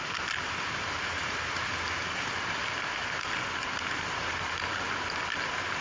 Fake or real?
real